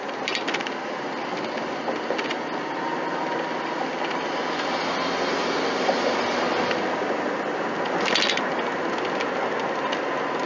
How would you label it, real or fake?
real